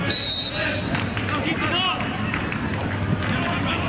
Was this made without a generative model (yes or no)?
no